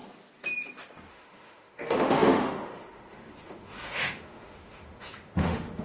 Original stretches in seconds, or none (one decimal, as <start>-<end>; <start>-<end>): 0.0-1.1